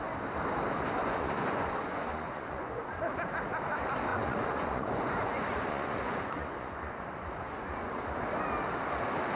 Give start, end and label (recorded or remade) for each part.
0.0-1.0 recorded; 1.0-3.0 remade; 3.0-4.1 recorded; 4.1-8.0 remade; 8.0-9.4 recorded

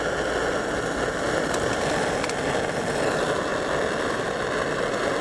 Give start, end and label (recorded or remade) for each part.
0.0-5.2 recorded

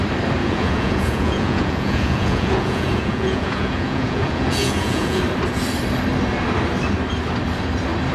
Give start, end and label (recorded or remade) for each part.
0.0-0.4 recorded; 0.4-5.2 remade; 5.2-8.1 recorded

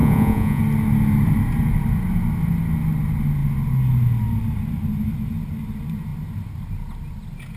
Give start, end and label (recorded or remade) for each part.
0.0-0.6 remade; 0.6-7.6 recorded